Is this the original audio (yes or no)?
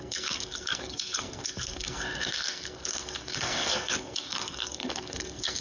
no